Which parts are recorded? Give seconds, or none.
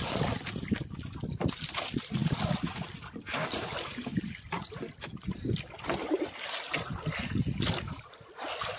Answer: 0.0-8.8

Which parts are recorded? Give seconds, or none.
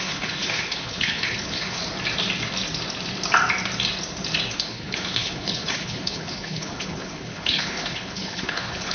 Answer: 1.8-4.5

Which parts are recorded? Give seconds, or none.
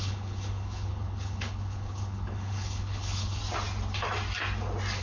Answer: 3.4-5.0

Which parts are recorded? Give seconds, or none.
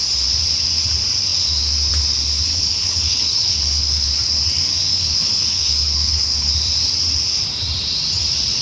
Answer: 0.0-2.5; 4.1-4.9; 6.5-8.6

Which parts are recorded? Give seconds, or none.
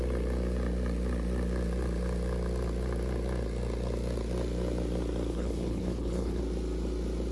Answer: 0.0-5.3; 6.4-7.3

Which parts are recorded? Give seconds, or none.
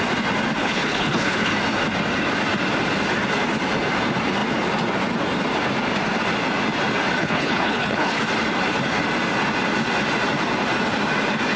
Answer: 0.0-0.6; 1.5-7.2; 8.2-11.6